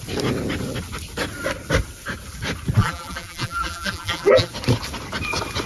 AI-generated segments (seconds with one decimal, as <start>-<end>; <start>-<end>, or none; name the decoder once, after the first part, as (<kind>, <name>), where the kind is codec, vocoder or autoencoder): 2.8-4.5 (vocoder, BigVGAN v2)